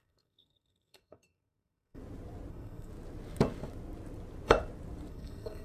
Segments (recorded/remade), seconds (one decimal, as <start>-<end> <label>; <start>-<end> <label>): 0.0-2.0 remade; 2.0-2.5 recorded; 2.5-2.9 remade; 2.9-5.1 recorded; 5.1-5.6 remade